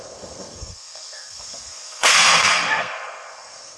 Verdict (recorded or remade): remade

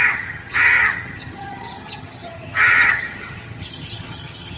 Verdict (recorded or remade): remade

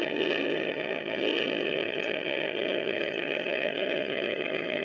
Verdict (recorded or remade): remade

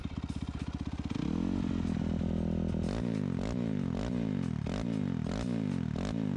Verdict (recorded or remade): recorded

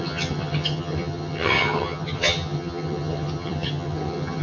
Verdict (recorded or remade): remade